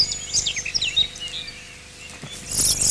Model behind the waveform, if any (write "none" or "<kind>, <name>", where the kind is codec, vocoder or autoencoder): none